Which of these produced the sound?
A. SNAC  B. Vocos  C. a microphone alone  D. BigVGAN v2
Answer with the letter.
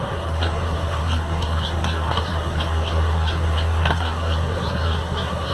A